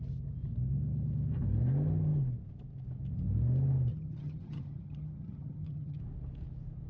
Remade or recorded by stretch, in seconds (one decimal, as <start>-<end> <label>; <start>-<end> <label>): 0.0-3.9 recorded; 3.9-6.0 remade; 6.0-6.9 recorded